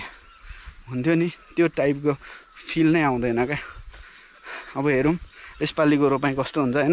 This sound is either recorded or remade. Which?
recorded